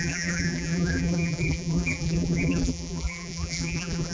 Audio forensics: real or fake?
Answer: fake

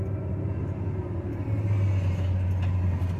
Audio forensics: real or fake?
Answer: real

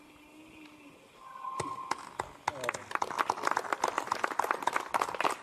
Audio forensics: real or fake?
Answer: real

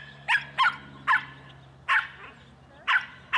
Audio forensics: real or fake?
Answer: real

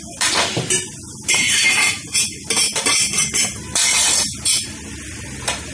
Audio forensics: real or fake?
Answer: fake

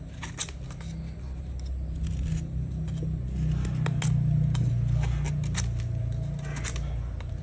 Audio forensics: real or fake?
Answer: real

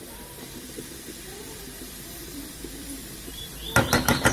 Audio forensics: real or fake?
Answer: fake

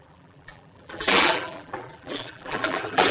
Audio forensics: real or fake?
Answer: fake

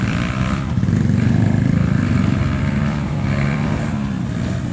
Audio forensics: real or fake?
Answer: fake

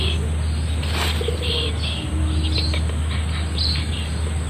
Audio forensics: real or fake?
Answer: real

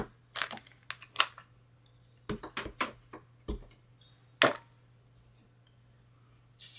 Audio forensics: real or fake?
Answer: real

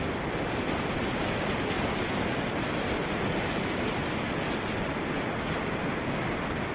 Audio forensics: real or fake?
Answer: real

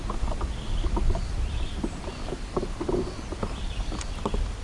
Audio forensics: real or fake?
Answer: real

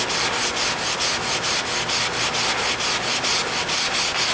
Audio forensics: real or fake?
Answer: real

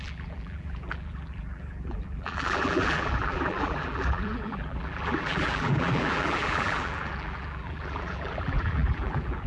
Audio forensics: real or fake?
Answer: fake